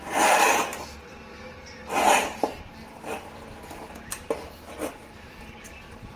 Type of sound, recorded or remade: recorded